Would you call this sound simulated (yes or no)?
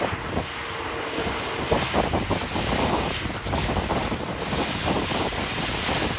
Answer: no